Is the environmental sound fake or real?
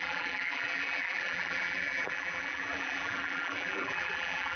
fake